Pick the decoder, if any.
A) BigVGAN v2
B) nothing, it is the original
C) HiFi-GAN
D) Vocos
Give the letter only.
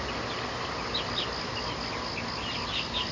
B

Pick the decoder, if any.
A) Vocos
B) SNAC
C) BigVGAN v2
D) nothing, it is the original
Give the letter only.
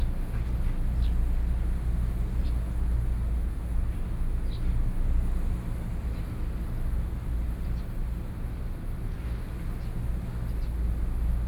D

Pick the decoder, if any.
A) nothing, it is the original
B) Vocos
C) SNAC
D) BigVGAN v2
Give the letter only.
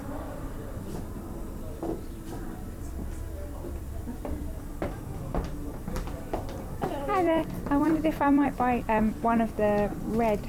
D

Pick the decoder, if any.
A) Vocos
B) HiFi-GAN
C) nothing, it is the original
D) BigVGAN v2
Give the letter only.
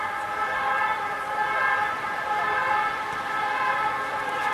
C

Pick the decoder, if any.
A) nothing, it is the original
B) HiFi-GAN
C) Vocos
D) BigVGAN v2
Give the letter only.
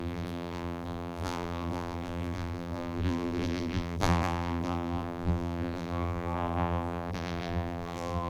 D